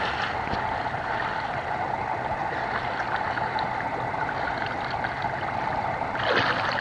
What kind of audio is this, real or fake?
real